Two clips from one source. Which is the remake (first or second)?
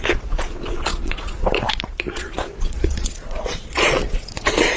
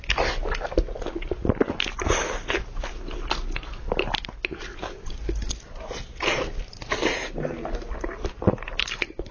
first